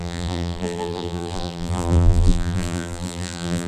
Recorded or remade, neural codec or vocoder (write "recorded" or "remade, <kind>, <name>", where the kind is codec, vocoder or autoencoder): remade, vocoder, BigVGAN v2